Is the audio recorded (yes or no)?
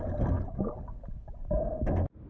yes